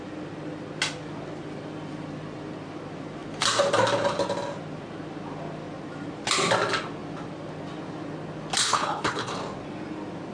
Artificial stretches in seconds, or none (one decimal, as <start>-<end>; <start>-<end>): 8.6-9.3